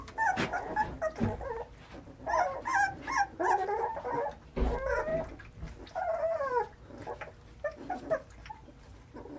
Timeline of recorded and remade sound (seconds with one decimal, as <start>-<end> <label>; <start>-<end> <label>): 0.0-9.4 recorded